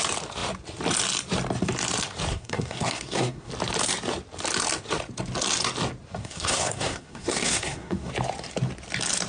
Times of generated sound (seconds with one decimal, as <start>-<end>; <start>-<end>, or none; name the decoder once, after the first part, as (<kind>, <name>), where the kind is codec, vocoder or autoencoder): 2.3-3.5 (codec, SNAC); 6.2-8.1